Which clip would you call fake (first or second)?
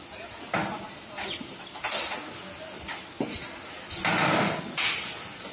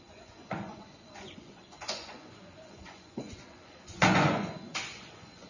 second